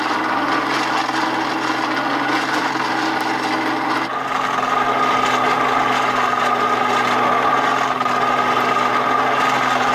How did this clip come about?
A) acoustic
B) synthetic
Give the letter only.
A